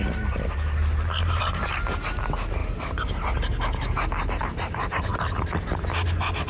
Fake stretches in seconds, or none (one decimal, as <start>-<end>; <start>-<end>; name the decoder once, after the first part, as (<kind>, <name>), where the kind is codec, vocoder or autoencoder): none